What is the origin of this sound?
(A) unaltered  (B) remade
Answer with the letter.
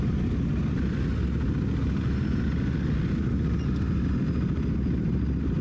A